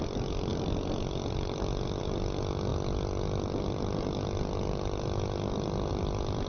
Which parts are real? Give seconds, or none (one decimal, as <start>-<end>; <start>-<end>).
0.0-6.5